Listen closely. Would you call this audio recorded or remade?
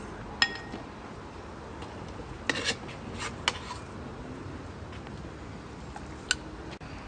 recorded